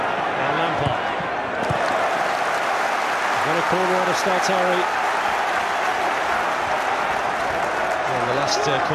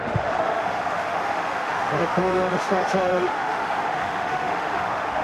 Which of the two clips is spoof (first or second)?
second